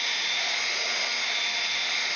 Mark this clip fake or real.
real